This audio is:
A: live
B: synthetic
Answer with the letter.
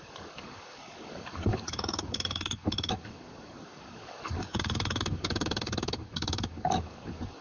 B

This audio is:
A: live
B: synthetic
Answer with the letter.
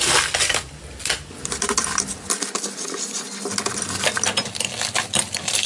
A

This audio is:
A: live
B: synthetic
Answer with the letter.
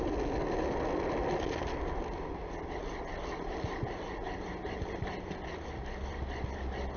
A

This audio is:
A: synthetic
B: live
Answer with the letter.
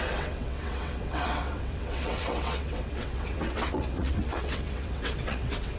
A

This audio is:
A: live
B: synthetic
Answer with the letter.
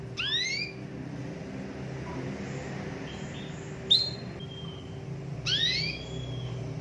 A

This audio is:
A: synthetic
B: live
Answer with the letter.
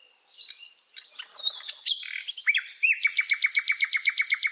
A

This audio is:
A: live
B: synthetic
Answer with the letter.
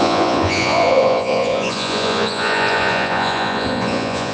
B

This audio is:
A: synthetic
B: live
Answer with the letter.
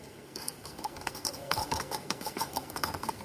A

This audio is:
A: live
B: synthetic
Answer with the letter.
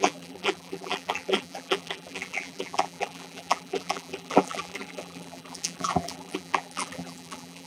B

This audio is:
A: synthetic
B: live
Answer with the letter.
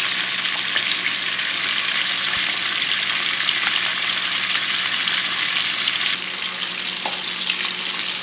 B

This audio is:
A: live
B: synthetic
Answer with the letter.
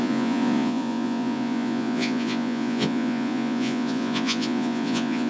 B